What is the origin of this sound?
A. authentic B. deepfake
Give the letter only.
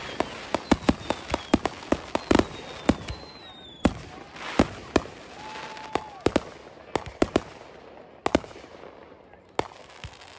A